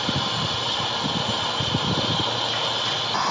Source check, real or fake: real